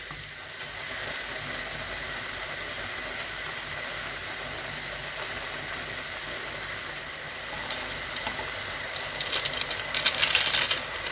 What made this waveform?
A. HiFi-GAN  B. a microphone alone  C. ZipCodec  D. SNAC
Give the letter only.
B